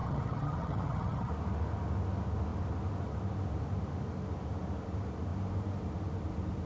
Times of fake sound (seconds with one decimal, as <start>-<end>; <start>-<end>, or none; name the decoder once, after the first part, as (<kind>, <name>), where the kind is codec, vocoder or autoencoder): 0.0-1.3 (vocoder, HiFi-GAN)